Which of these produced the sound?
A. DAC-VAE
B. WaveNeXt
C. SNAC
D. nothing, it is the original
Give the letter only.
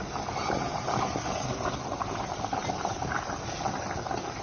D